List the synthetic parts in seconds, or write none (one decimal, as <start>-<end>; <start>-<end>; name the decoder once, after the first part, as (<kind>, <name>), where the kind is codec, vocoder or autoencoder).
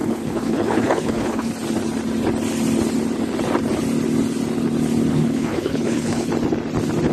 0.0-1.5 (codec, HILCodec); 5.1-6.3